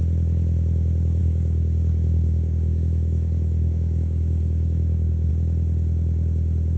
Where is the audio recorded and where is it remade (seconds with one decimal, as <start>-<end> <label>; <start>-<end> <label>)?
0.0-1.2 recorded; 1.2-5.3 remade; 5.3-6.8 recorded